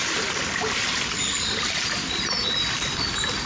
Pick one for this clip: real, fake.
real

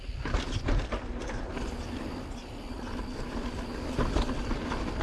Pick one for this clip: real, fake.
real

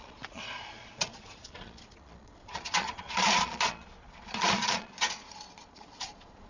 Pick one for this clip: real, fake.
fake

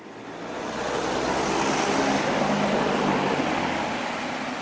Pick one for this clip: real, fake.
real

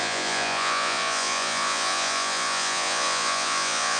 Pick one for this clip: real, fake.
fake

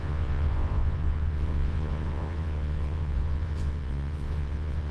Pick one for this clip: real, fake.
fake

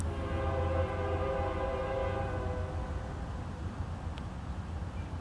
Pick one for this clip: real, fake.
real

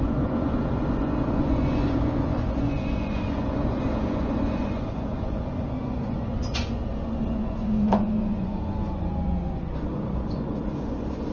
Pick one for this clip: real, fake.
fake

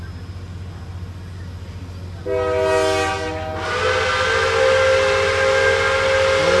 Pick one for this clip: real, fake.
real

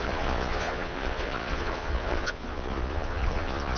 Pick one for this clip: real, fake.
fake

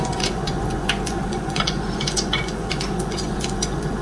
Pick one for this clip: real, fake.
fake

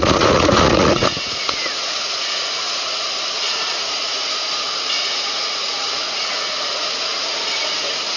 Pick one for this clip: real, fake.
fake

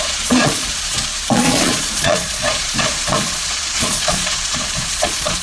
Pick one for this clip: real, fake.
fake